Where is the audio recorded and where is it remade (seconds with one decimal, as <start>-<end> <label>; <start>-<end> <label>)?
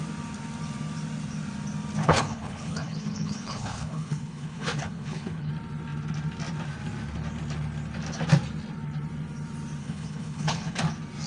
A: 0.0-2.0 recorded; 2.0-5.5 remade; 5.5-9.8 recorded; 9.8-10.8 remade; 10.8-11.3 recorded